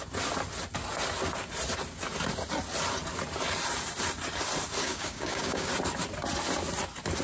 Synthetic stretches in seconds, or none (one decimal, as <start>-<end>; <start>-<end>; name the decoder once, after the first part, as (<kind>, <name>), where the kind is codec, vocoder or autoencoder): 4.8-5.7 (codec, DAC)